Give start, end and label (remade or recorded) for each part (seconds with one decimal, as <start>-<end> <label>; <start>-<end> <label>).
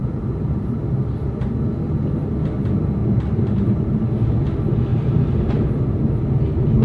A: 0.0-0.8 remade; 0.8-3.0 recorded; 3.0-4.0 remade; 4.0-4.9 recorded; 4.9-5.8 remade; 5.8-6.8 recorded